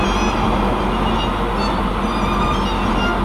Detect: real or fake real